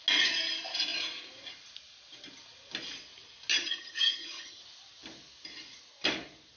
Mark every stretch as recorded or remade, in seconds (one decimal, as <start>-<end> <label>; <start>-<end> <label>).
0.0-3.5 recorded; 3.5-4.6 remade; 4.6-6.6 recorded